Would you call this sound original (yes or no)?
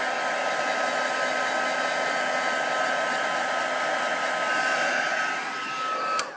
yes